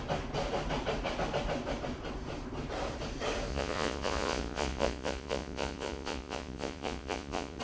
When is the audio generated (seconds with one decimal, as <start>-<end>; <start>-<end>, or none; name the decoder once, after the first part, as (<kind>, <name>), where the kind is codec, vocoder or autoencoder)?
3.5-7.6 (vocoder, Vocos)